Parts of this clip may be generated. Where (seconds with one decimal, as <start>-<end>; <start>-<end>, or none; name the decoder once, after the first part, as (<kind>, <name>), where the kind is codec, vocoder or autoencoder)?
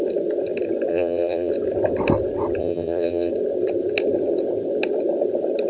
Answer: 0.9-1.5 (vocoder, HiFi-GAN); 2.6-3.3